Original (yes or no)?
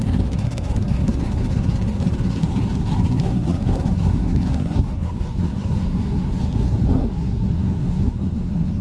no